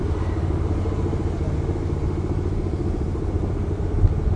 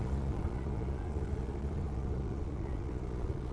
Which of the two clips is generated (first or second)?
second